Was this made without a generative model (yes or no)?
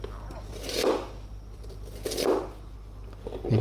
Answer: yes